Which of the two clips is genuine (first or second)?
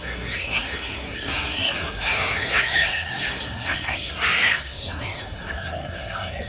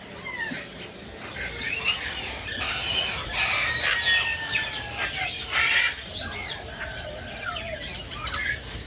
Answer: second